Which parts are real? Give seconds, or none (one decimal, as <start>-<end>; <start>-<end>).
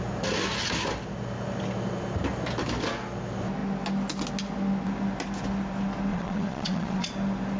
0.0-6.1; 7.1-7.6